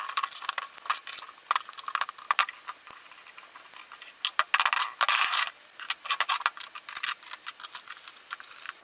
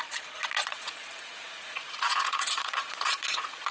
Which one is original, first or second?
first